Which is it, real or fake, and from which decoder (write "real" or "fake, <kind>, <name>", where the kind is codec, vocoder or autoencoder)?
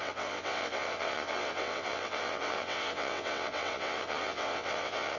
fake, vocoder, WaveNeXt